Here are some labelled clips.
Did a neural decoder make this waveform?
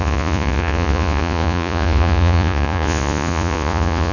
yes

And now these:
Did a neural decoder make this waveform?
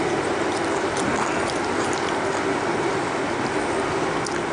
no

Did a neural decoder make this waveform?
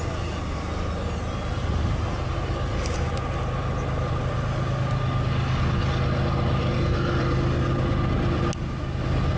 no